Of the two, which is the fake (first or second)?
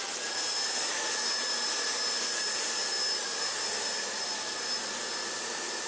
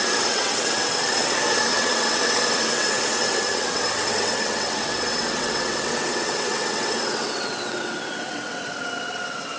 second